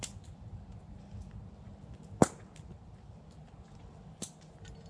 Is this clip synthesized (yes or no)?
no